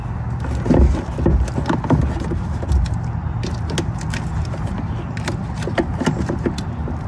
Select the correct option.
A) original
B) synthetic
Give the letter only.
A